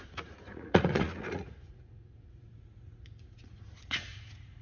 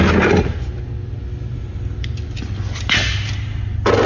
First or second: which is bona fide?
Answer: second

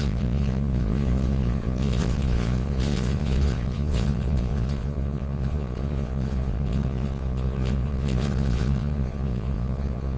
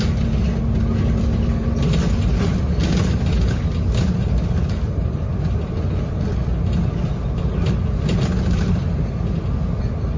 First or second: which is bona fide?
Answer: second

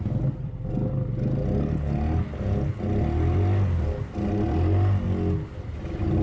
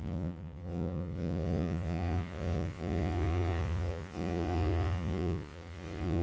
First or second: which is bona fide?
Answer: first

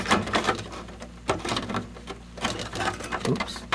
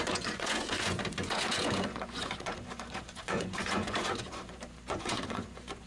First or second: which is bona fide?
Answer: first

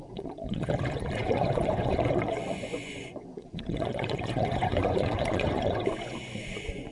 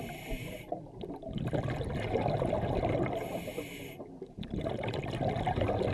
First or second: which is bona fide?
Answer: second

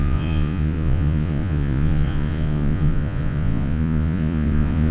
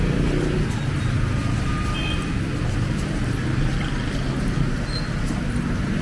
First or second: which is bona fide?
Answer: second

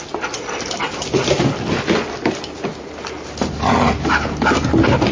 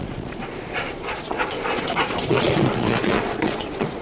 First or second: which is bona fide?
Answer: first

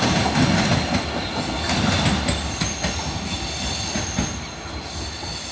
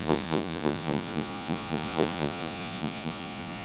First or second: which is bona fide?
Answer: first